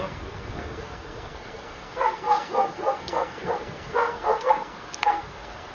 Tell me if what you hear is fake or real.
fake